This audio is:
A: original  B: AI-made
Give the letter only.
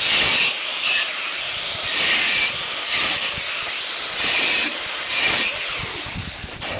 A